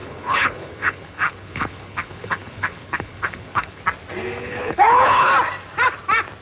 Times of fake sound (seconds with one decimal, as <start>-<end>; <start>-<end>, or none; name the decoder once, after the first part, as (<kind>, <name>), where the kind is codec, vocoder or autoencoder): 0.0-3.8 (codec, HILCodec); 4.4-5.3